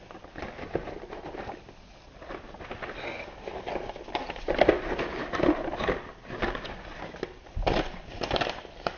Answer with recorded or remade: recorded